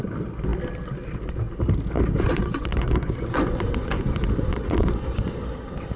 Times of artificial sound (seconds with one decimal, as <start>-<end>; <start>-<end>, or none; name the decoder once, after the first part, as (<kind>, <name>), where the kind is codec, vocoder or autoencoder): 2.3-5.4 (vocoder, Vocos)